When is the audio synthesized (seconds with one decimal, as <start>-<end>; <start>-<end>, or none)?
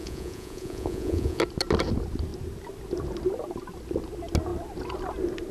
0.0-1.4